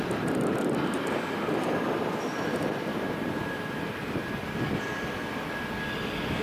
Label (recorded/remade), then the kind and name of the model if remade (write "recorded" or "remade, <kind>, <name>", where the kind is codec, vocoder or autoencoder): recorded